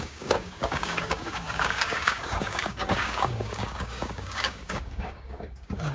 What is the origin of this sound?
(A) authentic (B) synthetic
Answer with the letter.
B